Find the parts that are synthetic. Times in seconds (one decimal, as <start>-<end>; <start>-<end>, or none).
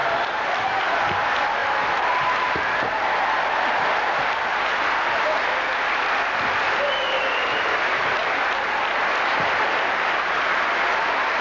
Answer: 0.0-11.4